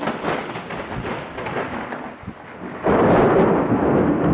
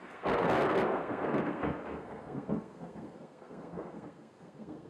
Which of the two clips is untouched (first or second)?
first